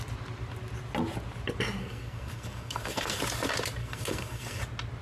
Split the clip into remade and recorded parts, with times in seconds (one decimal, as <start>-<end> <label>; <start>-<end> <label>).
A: 0.0-1.8 recorded; 1.8-3.2 remade; 3.2-3.8 recorded; 3.8-4.6 remade; 4.6-5.0 recorded